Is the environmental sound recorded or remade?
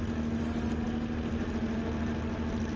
recorded